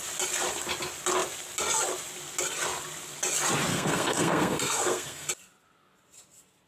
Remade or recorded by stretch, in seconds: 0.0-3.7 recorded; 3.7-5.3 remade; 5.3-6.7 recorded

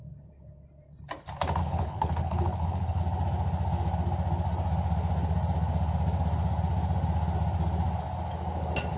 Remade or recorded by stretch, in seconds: 0.0-1.6 recorded; 1.6-3.0 remade; 3.0-9.0 recorded